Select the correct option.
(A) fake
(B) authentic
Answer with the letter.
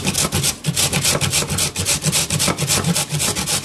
B